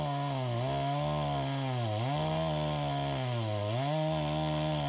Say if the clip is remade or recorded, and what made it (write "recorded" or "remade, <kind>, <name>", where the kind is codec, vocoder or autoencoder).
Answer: recorded